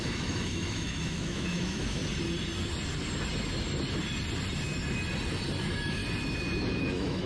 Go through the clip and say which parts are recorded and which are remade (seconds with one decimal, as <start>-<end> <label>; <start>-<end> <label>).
0.0-2.0 remade; 2.0-5.6 recorded; 5.6-6.0 remade; 6.0-6.8 recorded; 6.8-7.3 remade